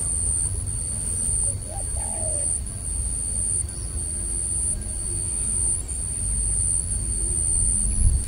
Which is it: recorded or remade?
recorded